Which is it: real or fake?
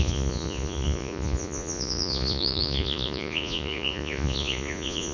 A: fake